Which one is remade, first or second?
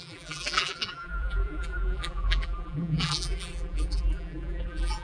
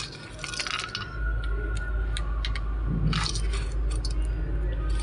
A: first